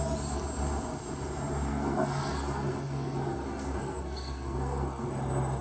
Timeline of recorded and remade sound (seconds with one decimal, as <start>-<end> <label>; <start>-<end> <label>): 0.0-1.7 recorded; 1.7-5.1 remade; 5.1-5.6 recorded